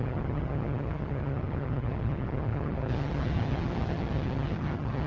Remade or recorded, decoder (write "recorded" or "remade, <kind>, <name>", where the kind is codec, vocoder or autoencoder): remade, vocoder, HiFi-GAN